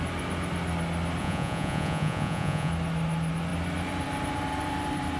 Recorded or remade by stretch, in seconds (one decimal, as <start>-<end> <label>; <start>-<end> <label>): 0.0-1.2 recorded; 1.2-2.7 remade; 2.7-5.2 recorded